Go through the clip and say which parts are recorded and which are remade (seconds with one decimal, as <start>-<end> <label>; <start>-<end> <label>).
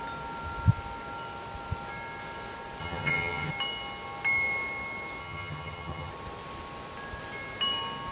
0.0-2.8 recorded; 2.8-3.5 remade; 3.5-5.2 recorded; 5.2-6.1 remade; 6.1-8.1 recorded